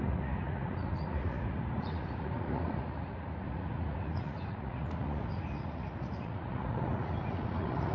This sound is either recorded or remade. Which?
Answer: remade